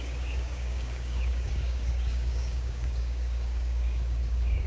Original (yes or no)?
no